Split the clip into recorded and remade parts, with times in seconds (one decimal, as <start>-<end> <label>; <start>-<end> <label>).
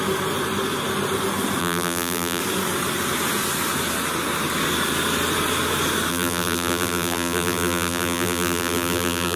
0.0-1.6 recorded; 1.6-2.4 remade; 2.4-6.1 recorded; 6.1-9.4 remade